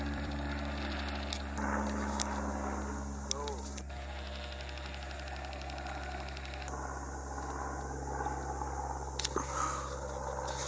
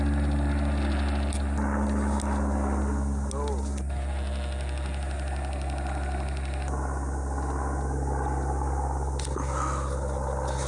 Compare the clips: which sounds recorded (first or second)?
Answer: second